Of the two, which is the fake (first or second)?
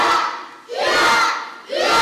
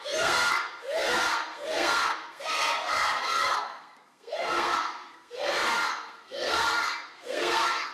second